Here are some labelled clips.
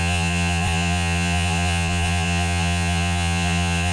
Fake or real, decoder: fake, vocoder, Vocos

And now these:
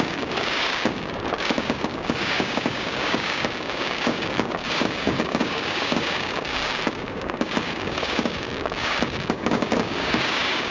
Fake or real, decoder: fake, codec, DAC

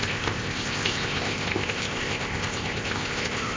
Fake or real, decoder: fake, codec, ZipCodec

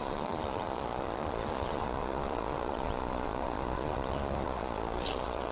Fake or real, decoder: fake, vocoder, Vocos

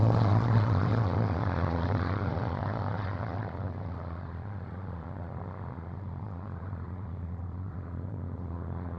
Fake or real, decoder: fake, vocoder, Vocos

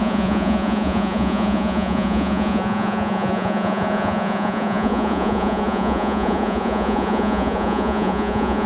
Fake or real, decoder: fake, vocoder, Vocos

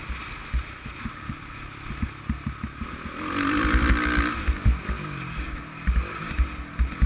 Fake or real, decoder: real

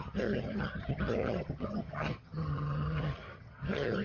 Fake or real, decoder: fake, vocoder, HiFi-GAN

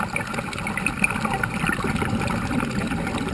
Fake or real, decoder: real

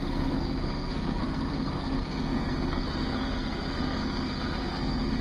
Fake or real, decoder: fake, codec, SNAC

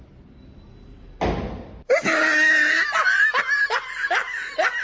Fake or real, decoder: real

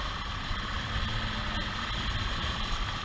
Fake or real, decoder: real